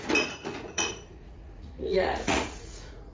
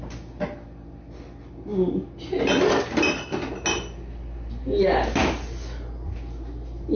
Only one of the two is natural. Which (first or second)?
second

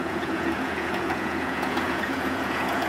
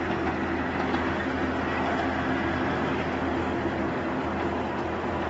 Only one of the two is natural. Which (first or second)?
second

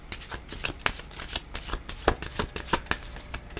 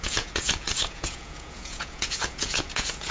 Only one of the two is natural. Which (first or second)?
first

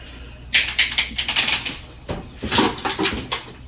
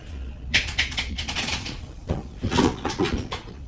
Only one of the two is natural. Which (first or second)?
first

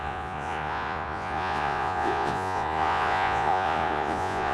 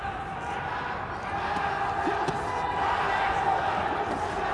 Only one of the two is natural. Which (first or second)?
second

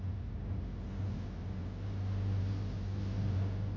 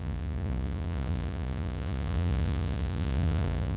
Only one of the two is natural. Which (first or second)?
first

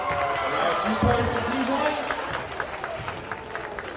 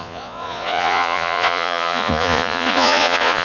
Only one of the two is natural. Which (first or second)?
first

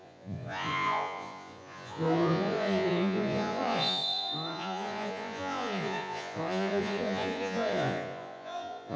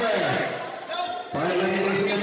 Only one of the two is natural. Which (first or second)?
second